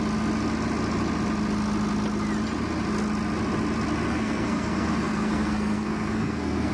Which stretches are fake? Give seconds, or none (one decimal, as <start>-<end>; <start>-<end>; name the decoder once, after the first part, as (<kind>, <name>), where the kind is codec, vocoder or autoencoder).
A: 4.1-6.7 (codec, SNAC)